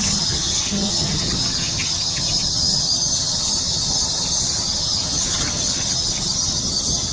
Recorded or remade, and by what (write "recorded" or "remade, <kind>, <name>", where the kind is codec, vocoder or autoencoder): remade, vocoder, HiFi-GAN